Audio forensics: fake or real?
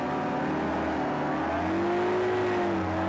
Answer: real